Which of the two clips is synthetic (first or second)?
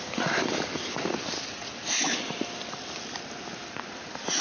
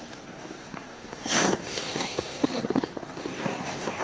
second